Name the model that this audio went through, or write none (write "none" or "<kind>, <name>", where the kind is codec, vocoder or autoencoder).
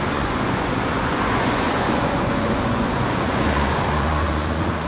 vocoder, Vocos